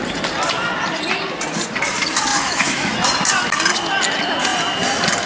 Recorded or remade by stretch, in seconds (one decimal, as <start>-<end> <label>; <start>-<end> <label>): 0.0-2.3 recorded; 2.3-2.9 remade; 2.9-5.3 recorded